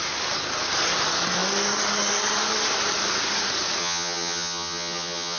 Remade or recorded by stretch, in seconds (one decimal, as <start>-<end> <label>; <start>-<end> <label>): 0.0-3.8 recorded; 3.8-5.4 remade